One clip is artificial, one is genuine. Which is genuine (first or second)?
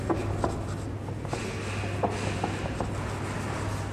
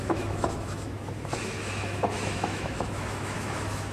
first